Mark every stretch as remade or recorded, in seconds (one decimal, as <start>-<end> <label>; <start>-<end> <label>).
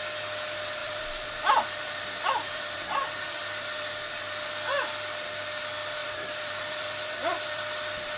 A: 0.0-0.8 recorded; 0.8-3.9 remade; 3.9-6.0 recorded; 6.0-8.2 remade